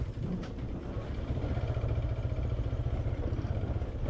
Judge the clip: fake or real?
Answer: real